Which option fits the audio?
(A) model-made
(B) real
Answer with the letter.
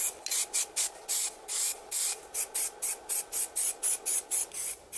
B